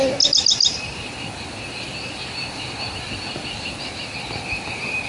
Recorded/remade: recorded